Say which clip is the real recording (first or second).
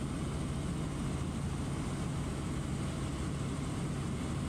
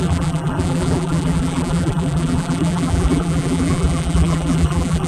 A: first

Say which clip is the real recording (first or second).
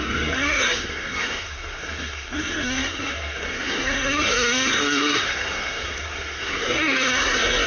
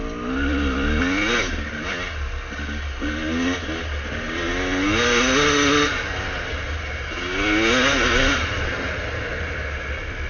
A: second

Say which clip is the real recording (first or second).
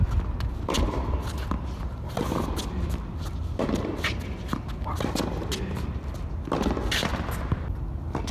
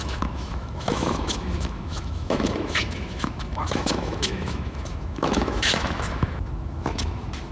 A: first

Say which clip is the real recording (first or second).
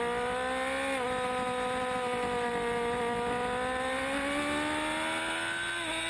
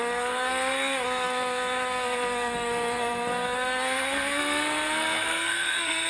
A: first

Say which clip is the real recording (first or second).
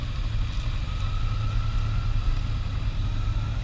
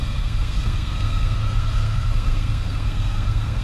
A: first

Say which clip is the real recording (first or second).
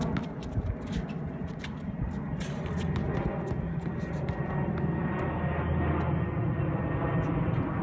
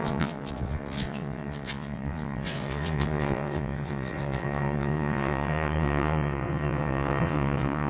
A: first